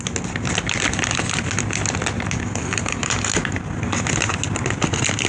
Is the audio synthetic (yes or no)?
no